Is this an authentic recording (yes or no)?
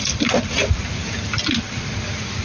yes